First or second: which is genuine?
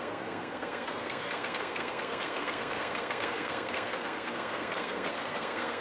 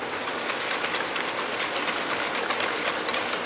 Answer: second